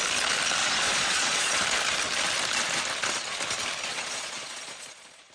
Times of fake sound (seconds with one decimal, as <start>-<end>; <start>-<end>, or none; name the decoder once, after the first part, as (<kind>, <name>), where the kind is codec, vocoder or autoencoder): 0.6-1.6 (vocoder, Vocos); 3.9-5.3